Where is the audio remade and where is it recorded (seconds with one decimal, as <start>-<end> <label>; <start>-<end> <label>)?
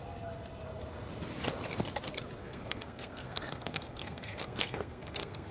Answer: 0.0-2.4 recorded; 2.4-5.5 remade